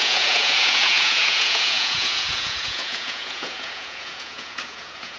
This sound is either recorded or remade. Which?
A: remade